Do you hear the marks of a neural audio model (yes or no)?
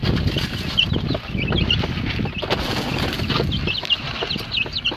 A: no